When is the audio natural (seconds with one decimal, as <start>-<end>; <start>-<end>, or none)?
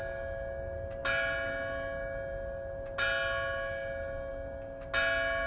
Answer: 0.0-5.5